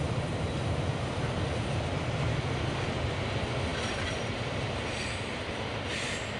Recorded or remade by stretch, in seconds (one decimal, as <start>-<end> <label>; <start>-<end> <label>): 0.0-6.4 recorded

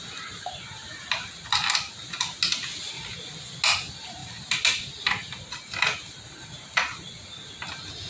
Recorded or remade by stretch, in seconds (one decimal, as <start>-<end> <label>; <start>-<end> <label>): 0.0-8.1 recorded

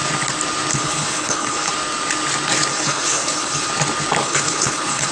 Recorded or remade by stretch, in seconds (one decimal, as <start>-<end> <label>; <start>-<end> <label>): 0.0-0.7 recorded; 0.7-1.7 remade; 1.7-2.7 recorded; 2.7-3.7 remade; 3.7-4.2 recorded; 4.2-5.1 remade

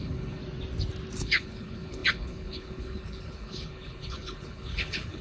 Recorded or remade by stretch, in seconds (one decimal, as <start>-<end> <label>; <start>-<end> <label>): 0.0-0.4 remade; 0.4-1.2 recorded; 1.2-5.2 remade

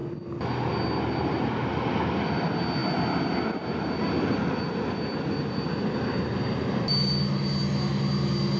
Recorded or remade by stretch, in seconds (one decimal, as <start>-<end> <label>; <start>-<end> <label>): 0.0-8.6 recorded